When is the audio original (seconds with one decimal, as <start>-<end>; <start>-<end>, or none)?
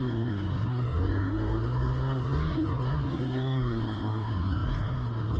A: none